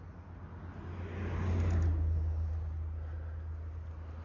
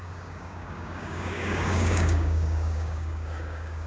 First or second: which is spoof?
second